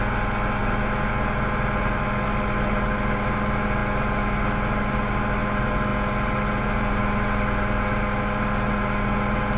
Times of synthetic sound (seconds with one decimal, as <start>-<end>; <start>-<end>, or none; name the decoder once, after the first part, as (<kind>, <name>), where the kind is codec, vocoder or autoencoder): none